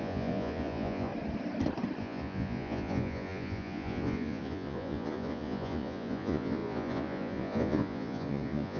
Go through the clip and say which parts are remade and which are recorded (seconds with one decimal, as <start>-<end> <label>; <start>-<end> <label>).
0.0-1.1 remade; 1.1-2.0 recorded; 2.0-8.8 remade